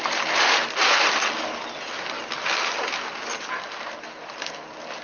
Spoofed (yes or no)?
no